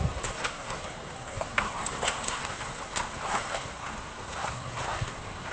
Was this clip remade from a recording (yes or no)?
yes